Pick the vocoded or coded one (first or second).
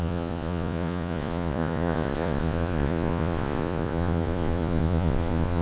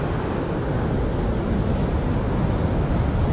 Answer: first